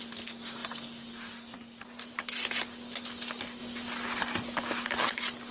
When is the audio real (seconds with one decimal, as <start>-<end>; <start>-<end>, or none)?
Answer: 0.0-5.5